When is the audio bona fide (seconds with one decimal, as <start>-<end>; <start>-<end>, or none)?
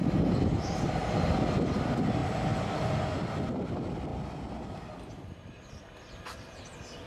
0.0-7.1